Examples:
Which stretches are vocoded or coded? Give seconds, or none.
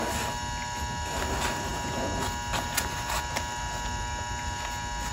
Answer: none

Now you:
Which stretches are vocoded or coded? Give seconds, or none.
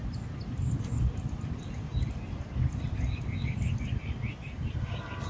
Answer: none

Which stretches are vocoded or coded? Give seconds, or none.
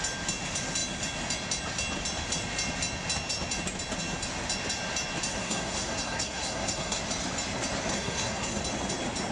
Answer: 5.3-7.0 (codec, SNAC); 7.9-8.6